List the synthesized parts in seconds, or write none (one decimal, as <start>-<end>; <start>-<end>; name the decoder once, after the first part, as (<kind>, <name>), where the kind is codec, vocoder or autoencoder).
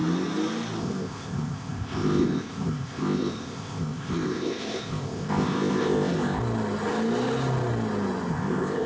0.8-6.4 (codec, ZipCodec); 8.3-8.9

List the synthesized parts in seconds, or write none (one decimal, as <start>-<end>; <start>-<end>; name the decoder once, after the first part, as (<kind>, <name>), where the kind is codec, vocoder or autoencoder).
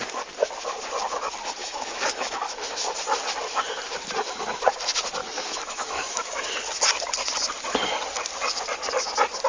1.6-2.8 (autoencoder, DAC-VAE); 5.2-6.6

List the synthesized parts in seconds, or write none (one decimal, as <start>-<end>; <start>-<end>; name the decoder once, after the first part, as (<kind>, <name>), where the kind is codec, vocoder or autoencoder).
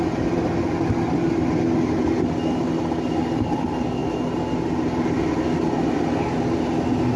none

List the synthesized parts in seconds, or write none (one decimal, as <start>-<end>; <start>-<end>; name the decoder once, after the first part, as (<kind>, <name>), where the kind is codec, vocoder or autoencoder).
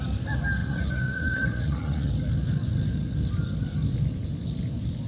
0.6-2.1 (vocoder, Vocos)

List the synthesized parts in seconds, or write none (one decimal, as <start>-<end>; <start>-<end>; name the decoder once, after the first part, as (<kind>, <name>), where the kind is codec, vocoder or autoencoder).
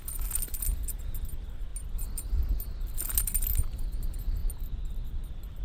none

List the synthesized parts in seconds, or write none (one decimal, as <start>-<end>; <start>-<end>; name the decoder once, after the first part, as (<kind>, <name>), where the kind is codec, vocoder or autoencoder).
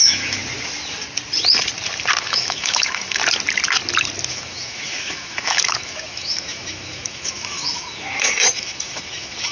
0.0-0.4 (autoencoder, DAC-VAE); 2.2-3.2; 4.3-9.5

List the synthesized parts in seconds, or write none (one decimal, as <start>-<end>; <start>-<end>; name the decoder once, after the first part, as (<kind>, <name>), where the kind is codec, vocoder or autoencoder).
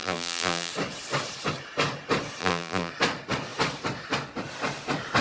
0.0-0.7 (vocoder, BigVGAN v2); 2.4-2.9